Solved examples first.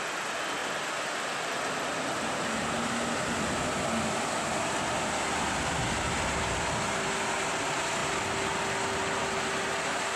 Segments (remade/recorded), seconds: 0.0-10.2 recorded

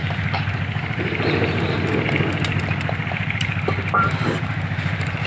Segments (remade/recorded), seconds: 0.0-3.2 recorded; 3.2-5.3 remade

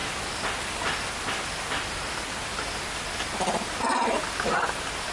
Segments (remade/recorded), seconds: 0.0-5.1 recorded

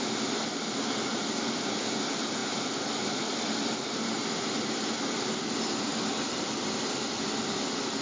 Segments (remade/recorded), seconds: 0.0-2.4 recorded; 2.4-5.0 remade; 5.0-5.9 recorded; 5.9-6.9 remade; 6.9-8.0 recorded

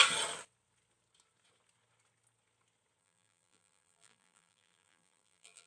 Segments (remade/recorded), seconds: 0.0-3.0 recorded; 3.0-5.7 remade